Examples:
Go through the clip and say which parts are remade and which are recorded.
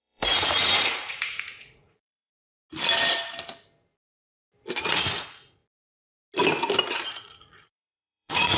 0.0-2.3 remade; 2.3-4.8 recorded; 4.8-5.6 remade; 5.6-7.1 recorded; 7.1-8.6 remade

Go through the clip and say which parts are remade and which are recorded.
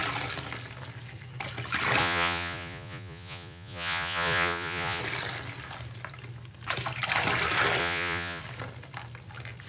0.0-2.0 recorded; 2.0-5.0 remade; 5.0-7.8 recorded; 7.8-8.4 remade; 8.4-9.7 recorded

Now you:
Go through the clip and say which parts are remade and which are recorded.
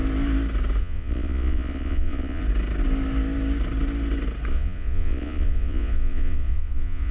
0.0-0.8 recorded; 0.8-2.4 remade; 2.4-4.5 recorded; 4.5-7.1 remade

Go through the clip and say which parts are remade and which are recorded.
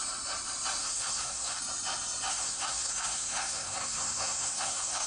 0.0-0.8 recorded; 0.8-1.6 remade; 1.6-2.3 recorded; 2.3-5.1 remade